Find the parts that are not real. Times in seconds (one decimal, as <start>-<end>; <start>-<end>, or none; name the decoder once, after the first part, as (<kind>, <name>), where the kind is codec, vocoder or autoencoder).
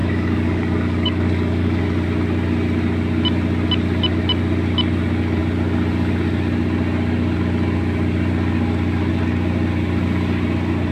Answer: 0.0-1.8 (codec, DAC)